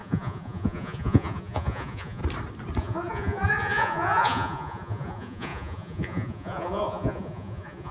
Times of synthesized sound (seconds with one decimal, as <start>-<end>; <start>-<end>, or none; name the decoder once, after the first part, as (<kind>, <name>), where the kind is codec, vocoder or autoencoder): 0.0-2.2 (vocoder, Vocos); 2.8-7.9

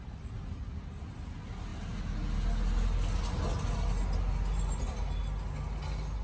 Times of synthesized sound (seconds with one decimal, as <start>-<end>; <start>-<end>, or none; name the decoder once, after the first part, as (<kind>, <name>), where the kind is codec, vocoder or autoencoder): none

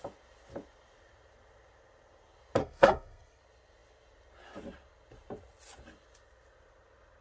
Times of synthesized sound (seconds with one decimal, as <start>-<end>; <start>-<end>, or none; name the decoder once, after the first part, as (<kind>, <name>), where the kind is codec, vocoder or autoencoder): 2.6-3.4 (codec, SNAC)